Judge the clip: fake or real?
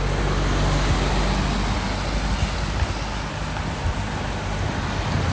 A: real